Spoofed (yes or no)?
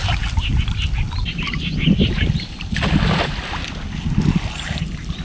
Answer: no